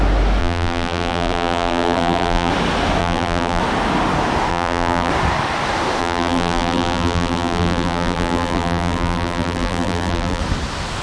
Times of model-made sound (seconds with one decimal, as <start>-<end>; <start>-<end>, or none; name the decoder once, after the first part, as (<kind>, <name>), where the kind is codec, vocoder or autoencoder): 0.4-2.5 (vocoder, BigVGAN v2); 3.0-3.6; 4.5-5.1; 6.0-10.4